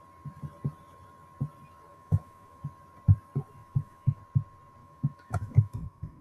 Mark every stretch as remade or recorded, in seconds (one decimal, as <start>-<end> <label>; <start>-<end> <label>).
0.0-1.9 recorded; 1.9-2.6 remade; 2.6-3.6 recorded; 3.6-4.2 remade; 4.2-4.8 recorded; 4.8-6.2 remade